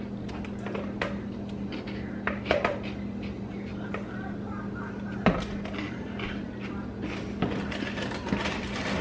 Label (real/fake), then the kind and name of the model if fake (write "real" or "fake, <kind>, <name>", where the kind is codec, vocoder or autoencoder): real